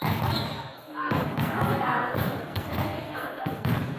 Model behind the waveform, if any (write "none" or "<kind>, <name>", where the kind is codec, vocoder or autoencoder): codec, SNAC